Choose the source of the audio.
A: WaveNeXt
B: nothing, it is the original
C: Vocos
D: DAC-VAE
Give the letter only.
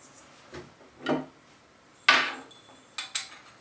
B